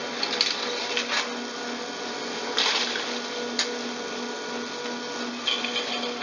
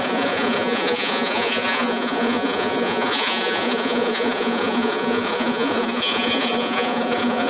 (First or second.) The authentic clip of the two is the first